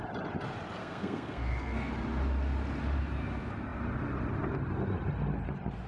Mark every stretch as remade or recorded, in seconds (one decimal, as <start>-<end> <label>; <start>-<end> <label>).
0.0-0.8 recorded; 0.8-1.9 remade; 1.9-5.9 recorded